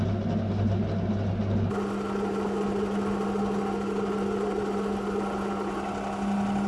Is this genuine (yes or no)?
yes